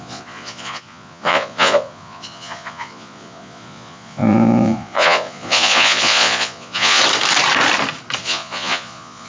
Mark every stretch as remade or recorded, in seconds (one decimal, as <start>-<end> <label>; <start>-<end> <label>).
0.0-7.0 remade; 7.0-8.2 recorded; 8.2-9.3 remade